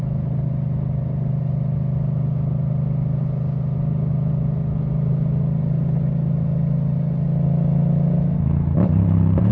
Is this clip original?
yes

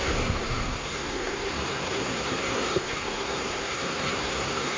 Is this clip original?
no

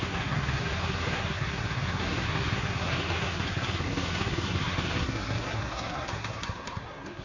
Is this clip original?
no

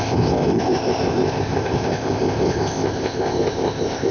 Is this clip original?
no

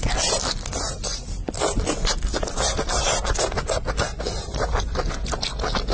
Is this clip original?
yes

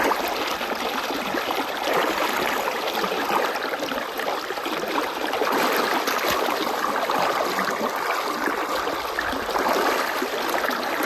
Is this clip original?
yes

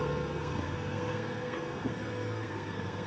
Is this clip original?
no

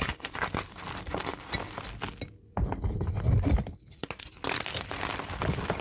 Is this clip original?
yes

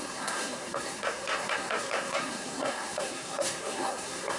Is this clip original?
no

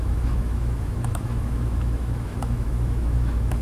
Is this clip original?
no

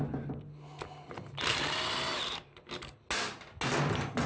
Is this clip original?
yes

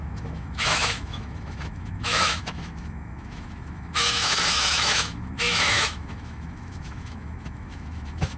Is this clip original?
no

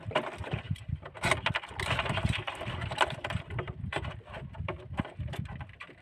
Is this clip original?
yes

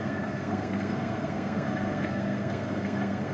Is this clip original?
no